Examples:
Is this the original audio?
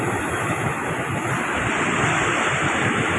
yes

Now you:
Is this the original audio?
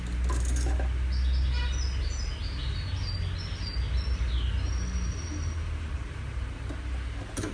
yes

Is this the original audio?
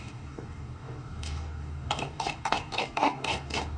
no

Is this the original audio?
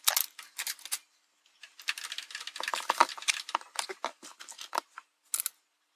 yes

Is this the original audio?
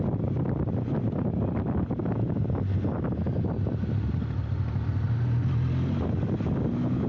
yes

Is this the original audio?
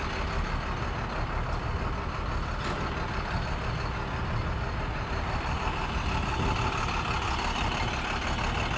yes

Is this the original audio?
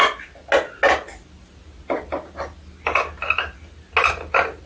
yes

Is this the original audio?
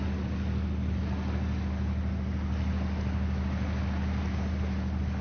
yes